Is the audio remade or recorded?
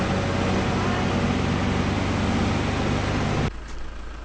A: recorded